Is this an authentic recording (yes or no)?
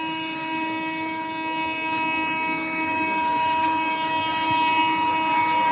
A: no